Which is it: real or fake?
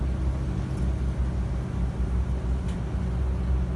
real